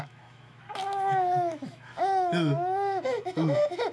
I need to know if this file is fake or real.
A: fake